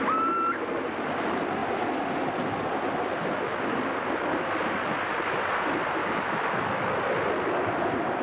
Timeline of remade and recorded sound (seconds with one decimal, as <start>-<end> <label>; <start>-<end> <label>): 0.0-6.0 recorded; 6.0-6.9 remade; 6.9-8.2 recorded